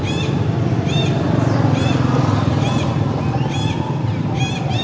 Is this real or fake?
real